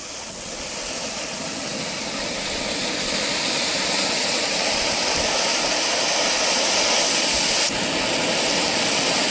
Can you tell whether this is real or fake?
real